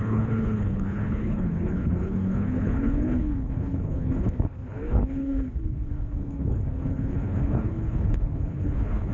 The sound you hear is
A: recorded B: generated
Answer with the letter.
B